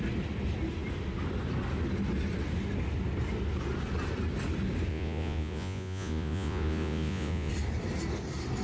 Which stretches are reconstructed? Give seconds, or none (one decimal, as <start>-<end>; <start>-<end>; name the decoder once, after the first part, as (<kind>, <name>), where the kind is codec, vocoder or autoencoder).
4.9-7.5 (vocoder, Vocos)